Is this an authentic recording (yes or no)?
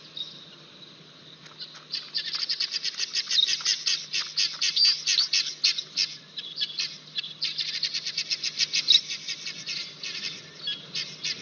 yes